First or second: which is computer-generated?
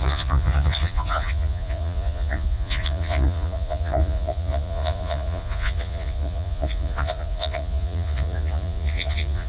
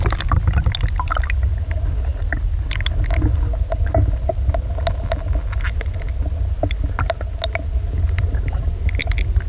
first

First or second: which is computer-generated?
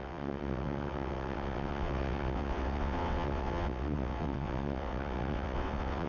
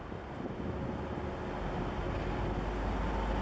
first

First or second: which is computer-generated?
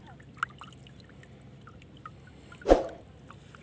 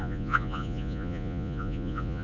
second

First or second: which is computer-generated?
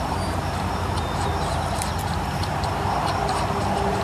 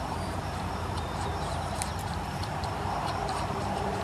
second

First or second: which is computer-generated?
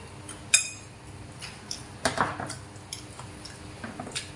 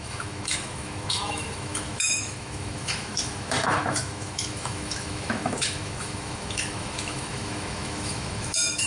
second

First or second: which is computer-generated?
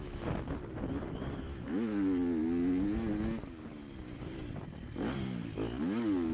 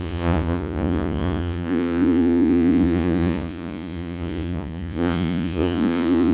second